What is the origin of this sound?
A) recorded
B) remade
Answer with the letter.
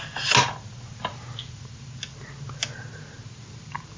A